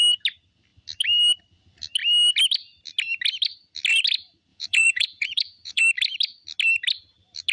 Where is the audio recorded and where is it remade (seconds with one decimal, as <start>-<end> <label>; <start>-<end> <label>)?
0.0-4.5 recorded; 4.5-5.8 remade; 5.8-7.5 recorded